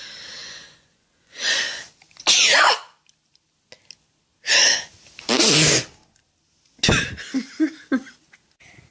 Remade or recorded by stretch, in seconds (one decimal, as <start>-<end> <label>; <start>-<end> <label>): 0.0-0.4 recorded; 0.4-1.8 remade; 1.8-8.9 recorded